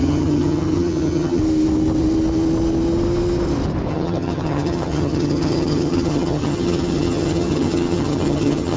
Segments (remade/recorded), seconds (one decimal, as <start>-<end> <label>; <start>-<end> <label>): 0.0-1.4 remade; 1.4-3.9 recorded; 3.9-8.8 remade